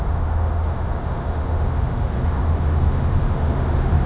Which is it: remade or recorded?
remade